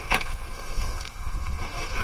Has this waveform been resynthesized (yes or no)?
yes